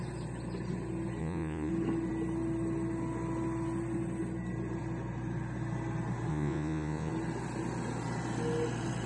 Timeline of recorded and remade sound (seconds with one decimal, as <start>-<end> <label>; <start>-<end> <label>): 0.0-1.2 recorded; 1.2-1.7 remade; 1.7-6.3 recorded; 6.3-7.1 remade; 7.1-9.1 recorded

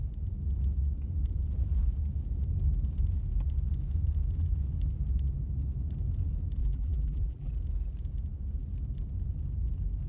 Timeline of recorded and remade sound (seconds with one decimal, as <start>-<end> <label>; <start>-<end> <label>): 0.0-6.6 recorded; 6.6-7.5 remade; 7.5-10.1 recorded

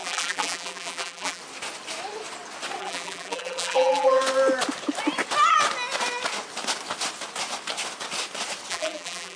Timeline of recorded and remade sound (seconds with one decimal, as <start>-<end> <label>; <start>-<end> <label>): 0.0-1.4 remade; 1.4-2.8 recorded; 2.8-4.2 remade; 4.2-8.7 recorded; 8.7-9.4 remade

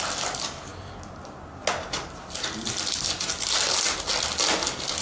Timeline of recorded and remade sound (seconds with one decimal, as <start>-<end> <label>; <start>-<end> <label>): 0.0-5.0 recorded

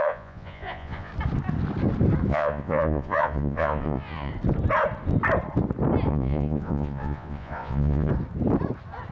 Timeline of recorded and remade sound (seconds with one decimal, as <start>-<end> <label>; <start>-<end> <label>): 0.0-1.1 remade; 1.1-2.3 recorded; 2.3-4.3 remade; 4.3-6.1 recorded; 6.1-8.1 remade; 8.1-9.1 recorded

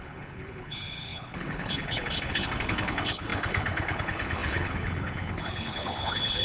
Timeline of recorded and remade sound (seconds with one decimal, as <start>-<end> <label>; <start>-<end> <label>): 0.0-6.4 remade